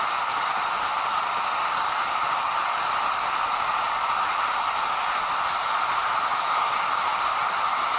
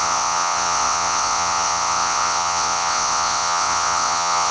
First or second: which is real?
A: first